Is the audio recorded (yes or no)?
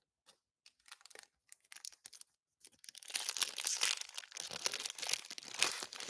yes